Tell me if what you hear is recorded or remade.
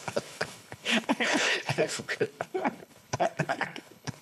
remade